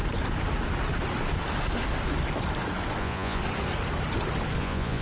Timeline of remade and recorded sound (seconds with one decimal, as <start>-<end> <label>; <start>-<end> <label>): 0.0-3.0 recorded; 3.0-3.4 remade; 3.4-4.6 recorded; 4.6-5.0 remade